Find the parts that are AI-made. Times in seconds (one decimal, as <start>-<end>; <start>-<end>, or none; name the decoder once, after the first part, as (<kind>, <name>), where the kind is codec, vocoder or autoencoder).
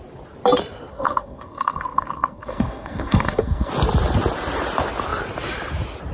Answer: 0.9-3.7 (codec, SNAC)